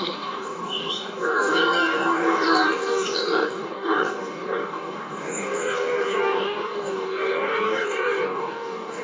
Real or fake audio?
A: fake